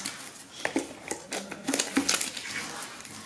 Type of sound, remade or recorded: recorded